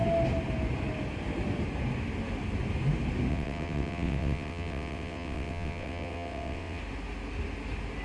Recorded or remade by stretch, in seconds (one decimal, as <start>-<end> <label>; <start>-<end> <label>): 0.0-3.3 recorded; 3.3-6.8 remade; 6.8-8.0 recorded